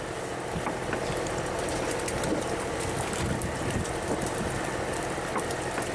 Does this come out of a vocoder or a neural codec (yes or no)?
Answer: no